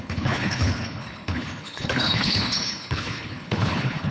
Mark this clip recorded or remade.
remade